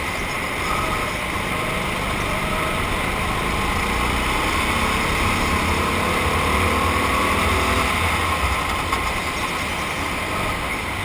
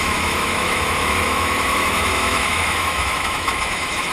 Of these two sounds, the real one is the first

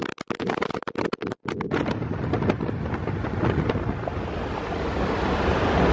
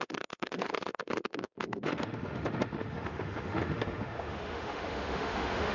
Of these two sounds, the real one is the first